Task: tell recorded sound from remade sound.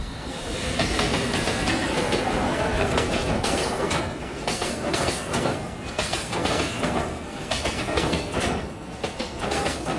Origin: remade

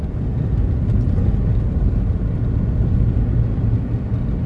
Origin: recorded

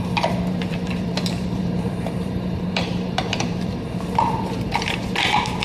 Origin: remade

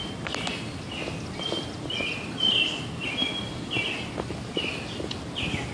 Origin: recorded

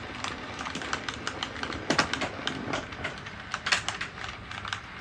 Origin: recorded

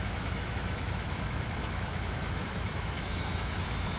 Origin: remade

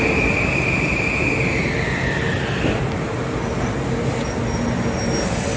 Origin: recorded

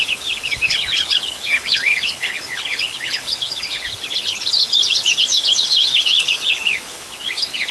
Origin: remade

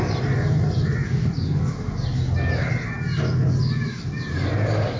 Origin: recorded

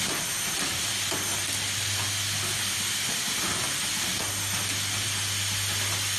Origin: recorded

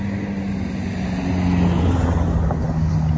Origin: recorded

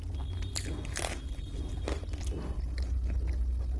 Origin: recorded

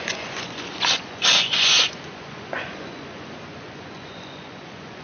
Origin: remade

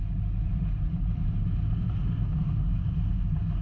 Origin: recorded